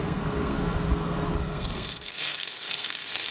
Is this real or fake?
fake